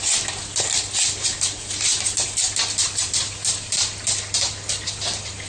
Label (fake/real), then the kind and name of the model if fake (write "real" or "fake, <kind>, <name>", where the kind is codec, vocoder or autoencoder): real